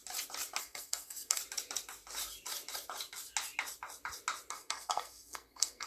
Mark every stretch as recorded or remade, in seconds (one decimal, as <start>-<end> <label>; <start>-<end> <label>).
0.0-0.6 recorded; 0.6-1.4 remade; 1.4-4.5 recorded; 4.5-5.9 remade